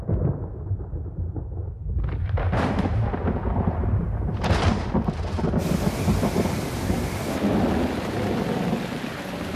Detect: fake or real real